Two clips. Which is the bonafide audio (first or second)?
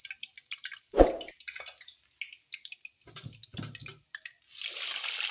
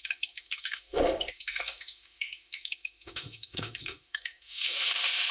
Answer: first